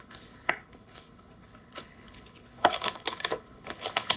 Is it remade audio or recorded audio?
remade